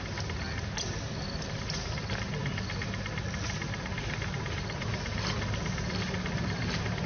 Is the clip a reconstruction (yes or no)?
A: no